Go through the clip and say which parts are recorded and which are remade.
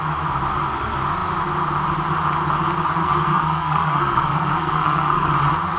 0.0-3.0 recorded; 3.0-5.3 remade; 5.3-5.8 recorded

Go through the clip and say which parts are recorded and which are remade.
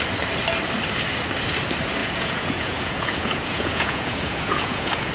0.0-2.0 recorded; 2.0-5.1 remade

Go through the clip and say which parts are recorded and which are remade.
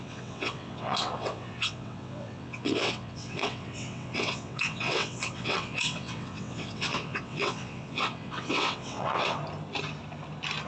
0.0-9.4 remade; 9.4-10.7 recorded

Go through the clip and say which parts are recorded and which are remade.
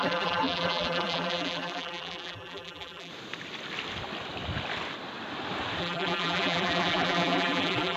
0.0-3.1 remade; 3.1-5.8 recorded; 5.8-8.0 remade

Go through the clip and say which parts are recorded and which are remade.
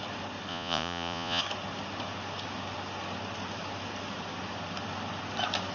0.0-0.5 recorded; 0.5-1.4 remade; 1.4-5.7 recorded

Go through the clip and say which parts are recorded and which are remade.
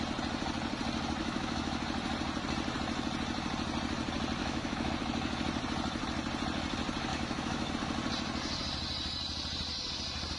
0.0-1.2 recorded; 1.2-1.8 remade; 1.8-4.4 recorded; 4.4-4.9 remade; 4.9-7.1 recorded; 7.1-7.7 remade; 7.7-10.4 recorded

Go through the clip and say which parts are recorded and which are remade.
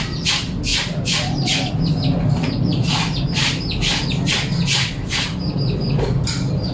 0.0-6.7 recorded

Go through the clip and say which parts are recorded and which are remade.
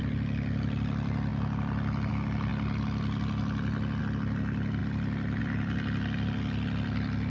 0.0-7.3 recorded